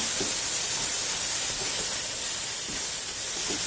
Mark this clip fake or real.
real